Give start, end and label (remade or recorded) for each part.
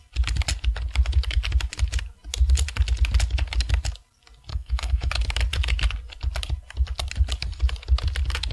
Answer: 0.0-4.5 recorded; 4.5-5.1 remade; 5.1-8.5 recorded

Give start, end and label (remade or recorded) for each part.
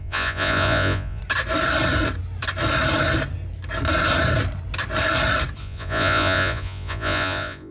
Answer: 0.0-1.2 remade; 1.2-5.6 recorded; 5.6-7.7 remade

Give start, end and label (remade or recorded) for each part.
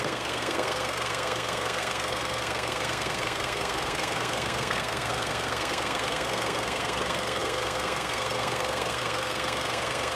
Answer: 0.0-10.2 remade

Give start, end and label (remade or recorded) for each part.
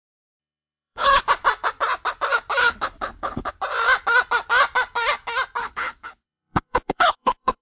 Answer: 0.0-0.4 recorded; 0.4-1.2 remade; 1.2-2.6 recorded; 2.6-3.5 remade; 3.5-5.6 recorded; 5.6-7.6 remade